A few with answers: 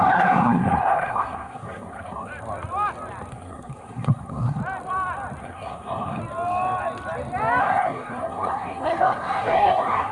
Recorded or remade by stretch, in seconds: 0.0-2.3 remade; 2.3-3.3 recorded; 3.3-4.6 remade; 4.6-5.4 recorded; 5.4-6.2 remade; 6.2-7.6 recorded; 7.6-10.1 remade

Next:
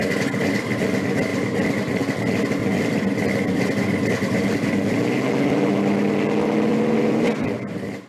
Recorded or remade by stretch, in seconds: 0.0-8.1 recorded

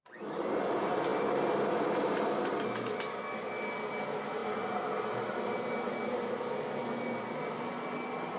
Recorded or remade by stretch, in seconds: 0.0-8.4 recorded